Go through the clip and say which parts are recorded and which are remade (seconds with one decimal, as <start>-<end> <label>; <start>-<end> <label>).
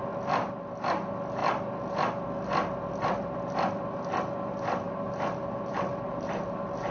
0.0-6.9 recorded